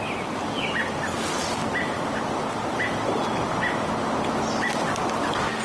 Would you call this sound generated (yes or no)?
no